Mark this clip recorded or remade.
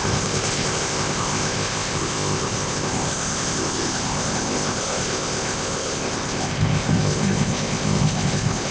remade